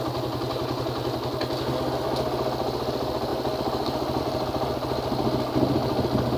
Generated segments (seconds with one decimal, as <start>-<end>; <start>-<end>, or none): none

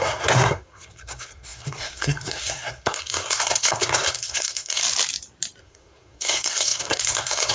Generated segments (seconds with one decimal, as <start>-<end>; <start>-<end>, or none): 0.0-4.8; 5.6-7.5